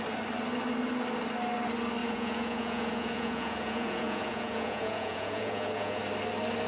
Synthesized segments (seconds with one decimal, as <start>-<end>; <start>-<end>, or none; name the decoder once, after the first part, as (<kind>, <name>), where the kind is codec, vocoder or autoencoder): 2.0-6.0 (vocoder, Vocos)